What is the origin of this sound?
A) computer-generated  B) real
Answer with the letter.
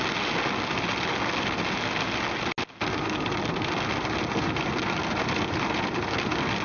B